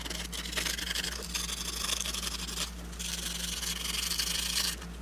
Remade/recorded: recorded